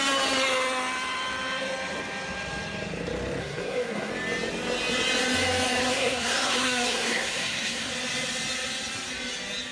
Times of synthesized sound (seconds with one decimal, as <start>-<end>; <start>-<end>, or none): 3.4-4.1; 5.8-7.9